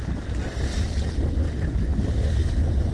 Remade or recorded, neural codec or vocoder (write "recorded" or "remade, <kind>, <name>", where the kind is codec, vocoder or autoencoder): recorded